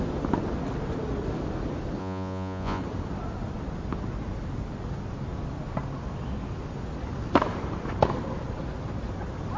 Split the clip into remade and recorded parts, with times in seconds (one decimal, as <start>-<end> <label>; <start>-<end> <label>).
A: 0.0-2.0 recorded; 2.0-2.8 remade; 2.8-9.6 recorded